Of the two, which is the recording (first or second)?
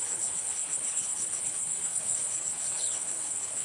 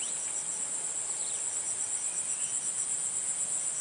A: second